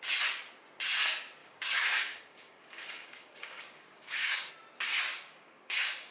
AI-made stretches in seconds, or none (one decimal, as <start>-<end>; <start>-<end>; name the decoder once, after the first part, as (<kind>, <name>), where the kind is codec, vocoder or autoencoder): 1.4-4.5 (codec, DAC); 5.1-6.1